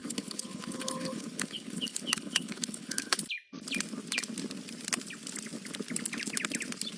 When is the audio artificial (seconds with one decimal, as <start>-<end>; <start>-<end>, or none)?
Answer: 0.0-3.2